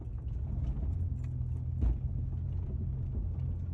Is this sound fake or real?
real